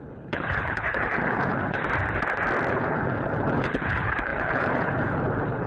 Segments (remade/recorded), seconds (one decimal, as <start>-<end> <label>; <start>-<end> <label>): 0.0-1.8 remade; 1.8-2.7 recorded; 2.7-5.7 remade

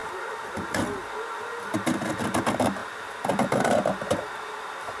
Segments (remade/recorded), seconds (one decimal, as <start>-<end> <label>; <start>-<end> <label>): 0.0-5.0 recorded

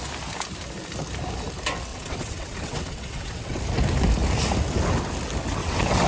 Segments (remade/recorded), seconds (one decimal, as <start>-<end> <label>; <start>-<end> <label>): 0.0-1.9 recorded; 1.9-3.6 remade; 3.6-5.6 recorded; 5.6-6.1 remade